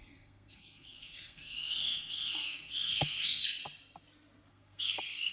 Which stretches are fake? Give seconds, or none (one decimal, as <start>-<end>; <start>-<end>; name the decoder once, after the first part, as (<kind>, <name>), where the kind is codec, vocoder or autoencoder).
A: 0.0-3.6 (codec, SNAC); 4.5-5.3